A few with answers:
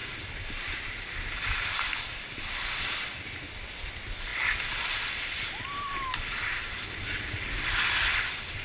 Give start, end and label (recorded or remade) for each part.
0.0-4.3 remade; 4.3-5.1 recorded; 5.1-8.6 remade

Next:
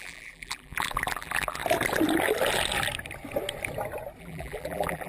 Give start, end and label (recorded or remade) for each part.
0.0-1.6 remade; 1.6-4.2 recorded; 4.2-5.1 remade

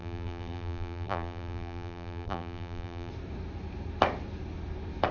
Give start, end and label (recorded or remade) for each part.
0.0-3.1 remade; 3.1-5.1 recorded

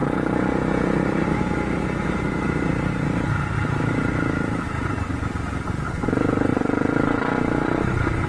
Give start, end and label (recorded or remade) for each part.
0.0-4.9 remade; 4.9-6.5 recorded; 6.5-7.3 remade; 7.3-8.3 recorded

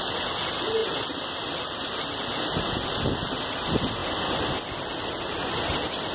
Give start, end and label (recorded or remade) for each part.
0.0-6.1 recorded

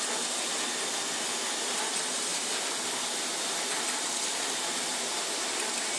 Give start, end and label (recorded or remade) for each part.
0.0-2.3 recorded; 2.3-6.0 remade

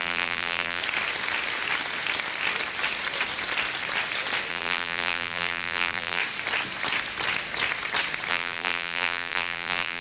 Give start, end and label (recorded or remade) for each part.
0.0-0.8 remade; 0.8-4.5 recorded; 4.5-6.2 remade; 6.2-8.3 recorded; 8.3-10.0 remade